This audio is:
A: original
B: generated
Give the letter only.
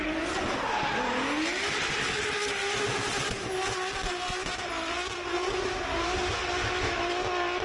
A